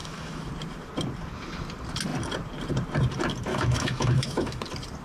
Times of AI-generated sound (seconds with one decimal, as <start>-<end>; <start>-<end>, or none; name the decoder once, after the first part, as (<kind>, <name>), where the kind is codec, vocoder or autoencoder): 0.0-0.5 (autoencoder, DAC-VAE); 3.5-4.6